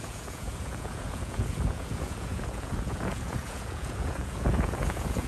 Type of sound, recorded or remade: remade